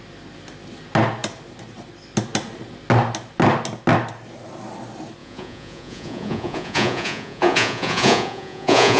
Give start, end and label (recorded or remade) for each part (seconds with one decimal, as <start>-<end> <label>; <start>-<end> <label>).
0.0-5.2 recorded; 5.2-9.0 remade